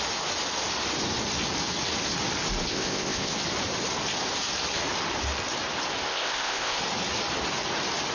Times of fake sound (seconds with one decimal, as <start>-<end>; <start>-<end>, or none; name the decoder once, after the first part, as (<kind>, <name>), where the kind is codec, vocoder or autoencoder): 2.7-3.3 (codec, ZipCodec); 6.1-6.8